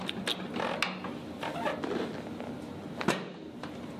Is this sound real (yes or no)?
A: yes